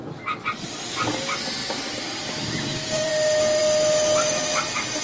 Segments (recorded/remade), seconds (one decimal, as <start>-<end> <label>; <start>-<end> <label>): 0.0-1.6 recorded; 1.6-3.1 remade; 3.1-5.0 recorded